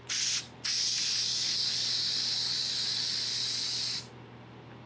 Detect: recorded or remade recorded